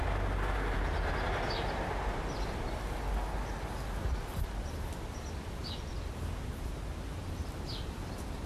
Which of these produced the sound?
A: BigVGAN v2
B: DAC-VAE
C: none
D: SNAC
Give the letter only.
C